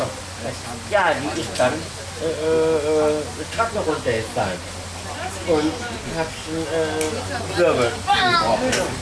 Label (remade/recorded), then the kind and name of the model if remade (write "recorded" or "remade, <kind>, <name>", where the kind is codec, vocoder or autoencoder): recorded